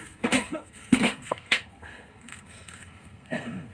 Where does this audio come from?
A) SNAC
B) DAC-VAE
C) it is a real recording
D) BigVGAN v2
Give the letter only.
A